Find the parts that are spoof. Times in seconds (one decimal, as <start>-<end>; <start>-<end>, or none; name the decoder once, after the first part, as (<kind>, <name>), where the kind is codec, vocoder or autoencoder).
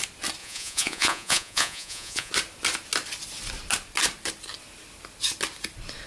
0.4-2.3 (vocoder, Vocos)